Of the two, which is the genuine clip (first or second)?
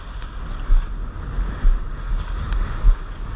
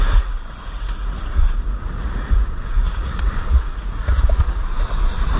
first